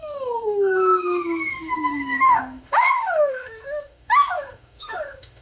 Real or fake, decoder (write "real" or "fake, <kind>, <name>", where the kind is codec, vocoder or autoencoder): fake, autoencoder, DAC-VAE